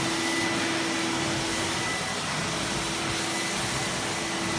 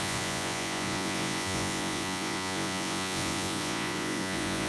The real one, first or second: first